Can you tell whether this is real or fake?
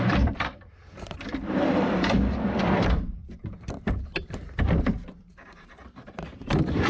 fake